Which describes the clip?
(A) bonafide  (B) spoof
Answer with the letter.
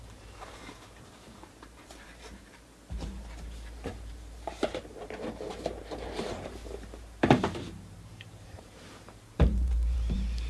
B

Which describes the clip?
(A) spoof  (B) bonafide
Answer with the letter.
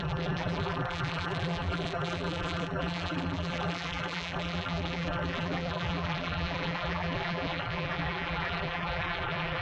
A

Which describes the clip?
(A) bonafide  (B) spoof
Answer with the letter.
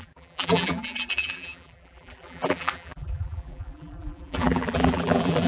B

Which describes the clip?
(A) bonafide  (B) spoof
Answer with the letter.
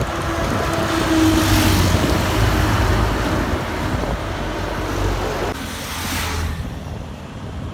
A